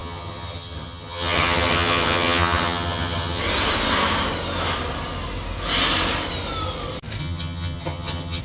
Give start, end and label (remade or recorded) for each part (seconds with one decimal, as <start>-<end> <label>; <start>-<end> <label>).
0.0-3.4 remade; 3.4-7.2 recorded; 7.2-8.4 remade